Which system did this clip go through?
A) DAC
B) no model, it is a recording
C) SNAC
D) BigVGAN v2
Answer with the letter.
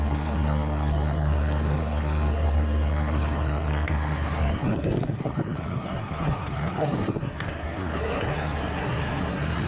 C